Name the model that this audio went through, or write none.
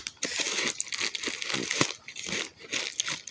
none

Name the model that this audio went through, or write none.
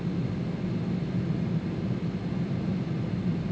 none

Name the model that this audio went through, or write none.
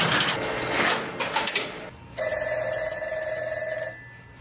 none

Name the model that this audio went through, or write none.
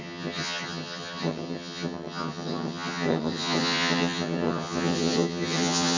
vocoder, HiFi-GAN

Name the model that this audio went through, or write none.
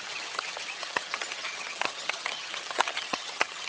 vocoder, HiFi-GAN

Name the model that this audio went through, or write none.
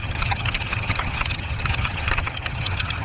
vocoder, HiFi-GAN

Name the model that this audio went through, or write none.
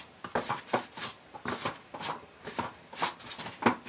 none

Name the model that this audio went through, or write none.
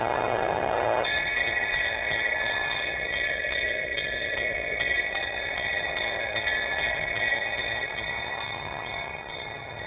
vocoder, HiFi-GAN